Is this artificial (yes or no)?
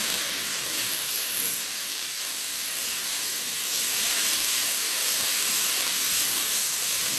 yes